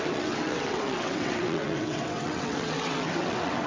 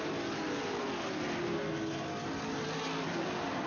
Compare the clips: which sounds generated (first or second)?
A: first